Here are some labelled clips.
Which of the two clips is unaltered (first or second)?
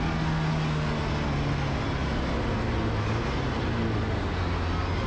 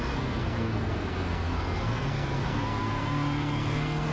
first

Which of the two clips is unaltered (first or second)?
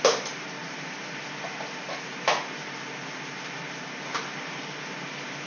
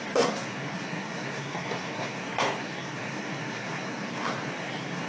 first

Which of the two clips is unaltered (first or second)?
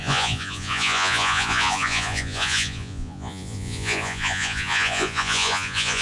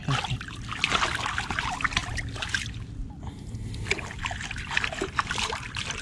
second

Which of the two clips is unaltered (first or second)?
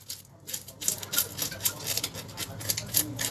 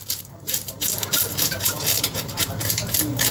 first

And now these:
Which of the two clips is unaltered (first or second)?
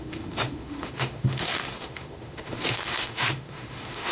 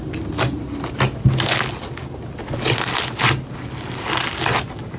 second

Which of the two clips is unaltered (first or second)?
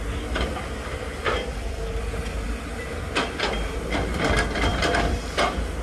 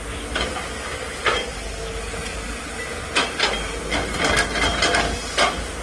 second